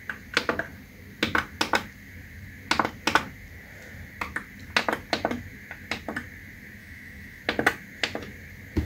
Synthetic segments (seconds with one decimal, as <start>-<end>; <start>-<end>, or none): 6.8-7.4